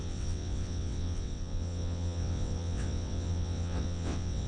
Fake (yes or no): yes